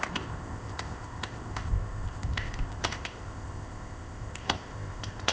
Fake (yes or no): yes